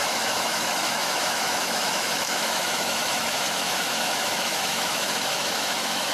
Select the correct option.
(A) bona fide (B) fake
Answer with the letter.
B